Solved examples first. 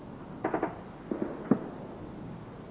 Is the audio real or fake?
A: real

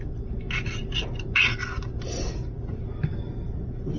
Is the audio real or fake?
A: real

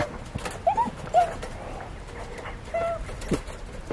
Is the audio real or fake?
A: real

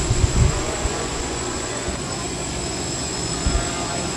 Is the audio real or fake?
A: fake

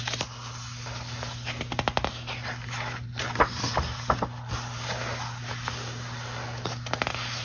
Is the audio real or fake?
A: real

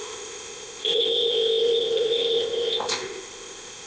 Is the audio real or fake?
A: fake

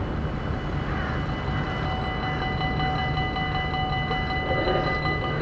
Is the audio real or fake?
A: real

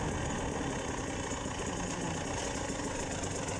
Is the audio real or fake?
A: real